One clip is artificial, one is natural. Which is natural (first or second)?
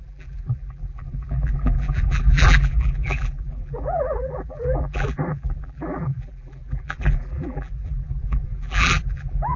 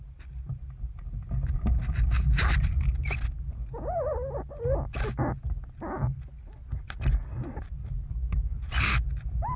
second